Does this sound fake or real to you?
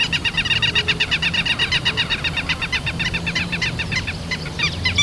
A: real